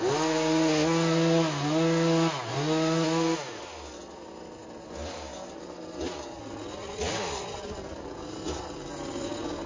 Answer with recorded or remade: recorded